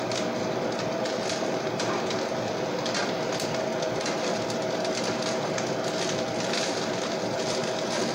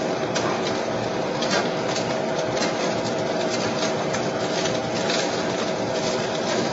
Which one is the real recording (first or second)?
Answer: second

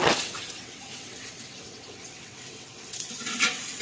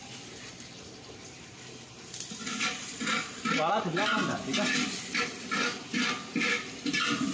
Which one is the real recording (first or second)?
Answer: second